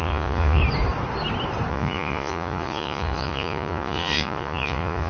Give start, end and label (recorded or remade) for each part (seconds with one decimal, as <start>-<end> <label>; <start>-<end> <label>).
0.0-0.6 remade; 0.6-1.7 recorded; 1.7-5.1 remade